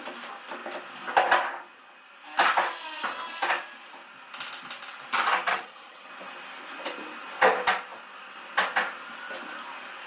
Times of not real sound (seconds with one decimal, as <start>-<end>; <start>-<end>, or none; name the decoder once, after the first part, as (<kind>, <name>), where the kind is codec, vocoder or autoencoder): 5.5-6.1 (vocoder, HiFi-GAN)